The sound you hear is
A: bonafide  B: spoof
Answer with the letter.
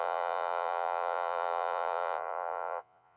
B